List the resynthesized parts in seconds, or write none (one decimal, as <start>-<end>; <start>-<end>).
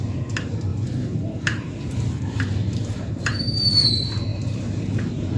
0.7-3.9; 4.3-5.4